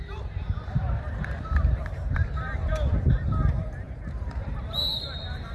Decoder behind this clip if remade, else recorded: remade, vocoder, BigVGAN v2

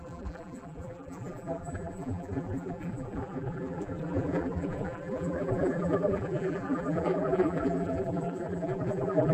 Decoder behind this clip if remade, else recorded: remade, vocoder, BigVGAN v2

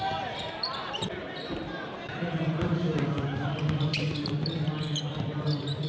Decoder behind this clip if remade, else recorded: remade, vocoder, BigVGAN v2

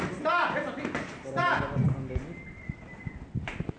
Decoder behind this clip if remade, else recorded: recorded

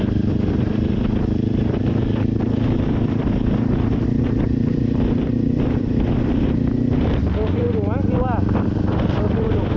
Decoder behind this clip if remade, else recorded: remade, vocoder, BigVGAN v2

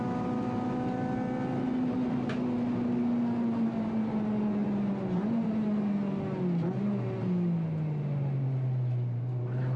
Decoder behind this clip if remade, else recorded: recorded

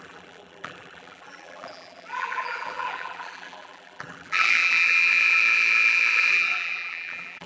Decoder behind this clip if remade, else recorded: remade, vocoder, BigVGAN v2